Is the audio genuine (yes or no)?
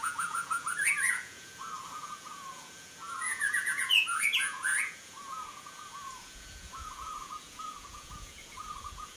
no